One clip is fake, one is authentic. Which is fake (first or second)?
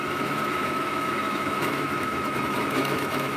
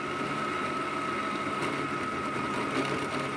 first